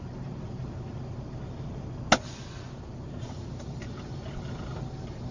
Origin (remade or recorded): recorded